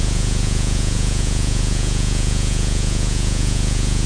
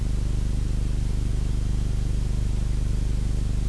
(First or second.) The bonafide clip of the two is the second